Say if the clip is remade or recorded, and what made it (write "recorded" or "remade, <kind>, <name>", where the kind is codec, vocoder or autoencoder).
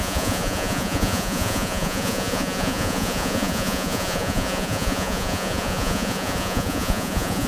remade, vocoder, Vocos